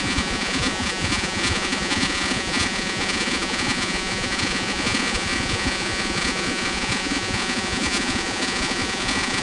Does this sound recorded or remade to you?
remade